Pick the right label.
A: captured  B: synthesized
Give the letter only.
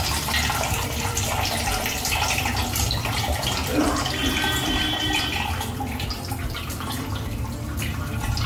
B